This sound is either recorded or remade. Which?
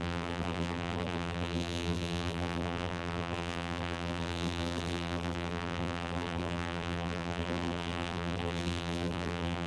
remade